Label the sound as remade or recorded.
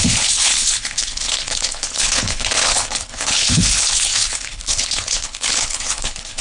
remade